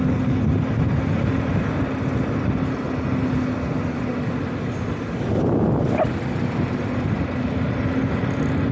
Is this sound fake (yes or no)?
no